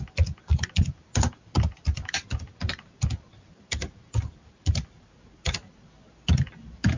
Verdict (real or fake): real